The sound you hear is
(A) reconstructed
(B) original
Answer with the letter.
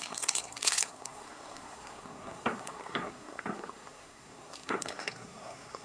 A